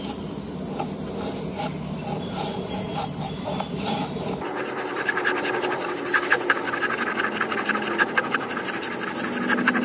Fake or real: real